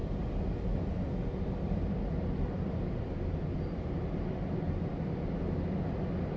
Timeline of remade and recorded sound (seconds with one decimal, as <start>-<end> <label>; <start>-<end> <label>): 0.0-6.4 recorded